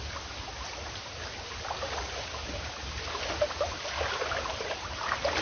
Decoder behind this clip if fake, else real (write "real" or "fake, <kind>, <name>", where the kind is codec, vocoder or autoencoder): real